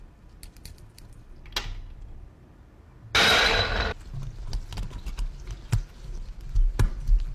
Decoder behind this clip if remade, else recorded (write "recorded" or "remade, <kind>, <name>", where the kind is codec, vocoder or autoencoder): recorded